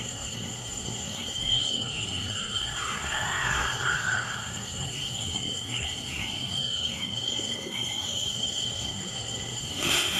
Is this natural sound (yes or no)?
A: no